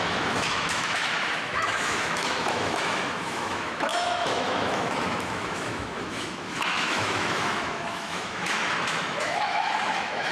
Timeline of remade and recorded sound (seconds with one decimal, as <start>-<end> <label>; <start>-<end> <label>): 0.0-10.3 remade